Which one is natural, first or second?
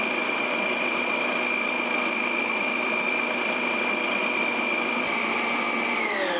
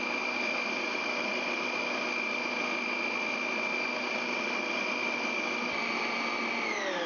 second